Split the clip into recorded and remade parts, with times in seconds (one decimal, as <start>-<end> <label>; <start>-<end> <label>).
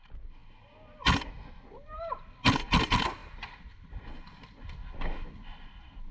0.0-3.2 recorded; 3.2-3.7 remade; 3.7-6.1 recorded